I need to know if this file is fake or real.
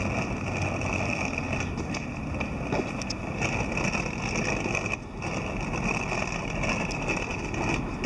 real